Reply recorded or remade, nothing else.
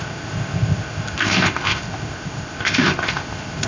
remade